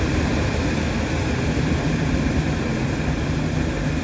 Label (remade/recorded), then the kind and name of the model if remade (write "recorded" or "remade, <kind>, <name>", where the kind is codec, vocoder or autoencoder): recorded